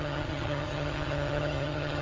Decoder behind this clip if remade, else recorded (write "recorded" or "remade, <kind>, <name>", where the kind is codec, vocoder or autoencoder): remade, vocoder, HiFi-GAN